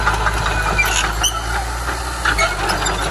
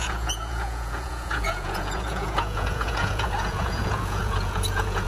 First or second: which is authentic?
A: first